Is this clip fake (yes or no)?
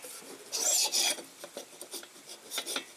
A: no